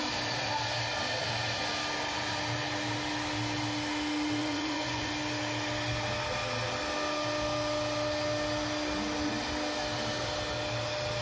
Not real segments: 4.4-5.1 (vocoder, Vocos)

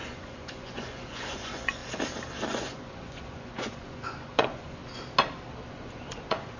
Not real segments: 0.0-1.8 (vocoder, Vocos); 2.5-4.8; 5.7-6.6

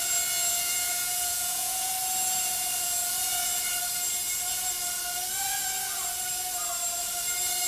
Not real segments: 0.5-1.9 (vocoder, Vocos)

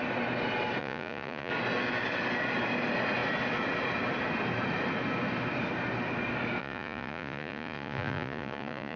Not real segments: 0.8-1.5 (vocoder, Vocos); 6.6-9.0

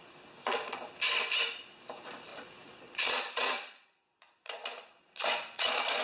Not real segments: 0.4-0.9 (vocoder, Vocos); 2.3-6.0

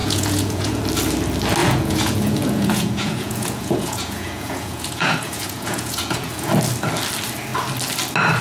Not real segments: 0.0-0.8 (vocoder, Vocos); 1.6-6.5

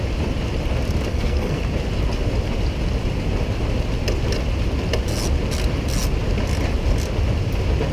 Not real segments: 1.1-1.6 (codec, SNAC)

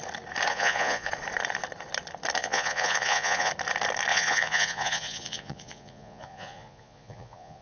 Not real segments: 0.5-1.1 (vocoder, Vocos); 2.4-3.5; 4.1-7.6